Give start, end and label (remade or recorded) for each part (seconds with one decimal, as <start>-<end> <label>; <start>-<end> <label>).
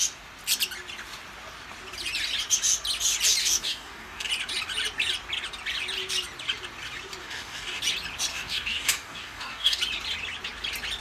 0.0-3.4 recorded; 3.4-4.3 remade; 4.3-7.2 recorded; 7.2-7.8 remade; 7.8-8.3 recorded; 8.3-9.8 remade; 9.8-11.0 recorded